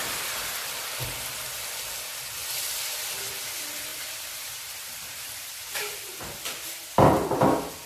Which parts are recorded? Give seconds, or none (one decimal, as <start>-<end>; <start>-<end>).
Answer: 0.0-3.9; 6.1-7.9